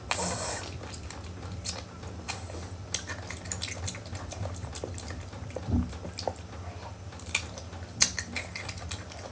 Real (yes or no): yes